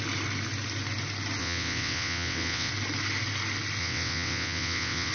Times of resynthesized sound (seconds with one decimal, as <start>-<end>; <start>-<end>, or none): 1.4-2.7; 3.8-5.1